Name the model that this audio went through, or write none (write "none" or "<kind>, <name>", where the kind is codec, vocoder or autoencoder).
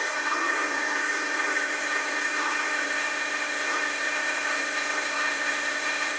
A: codec, SNAC